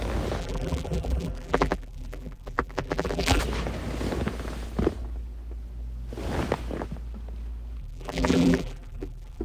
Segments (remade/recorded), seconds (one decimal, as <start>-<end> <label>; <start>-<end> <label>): 0.0-0.4 recorded; 0.4-3.4 remade; 3.4-7.8 recorded; 7.8-9.4 remade